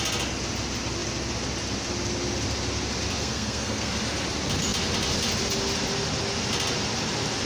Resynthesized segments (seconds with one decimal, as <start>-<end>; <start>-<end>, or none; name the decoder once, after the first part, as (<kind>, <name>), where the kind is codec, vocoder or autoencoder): 3.2-3.9 (codec, SNAC)